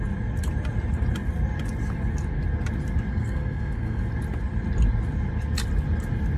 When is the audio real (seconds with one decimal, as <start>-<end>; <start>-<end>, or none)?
0.0-3.1; 4.0-6.4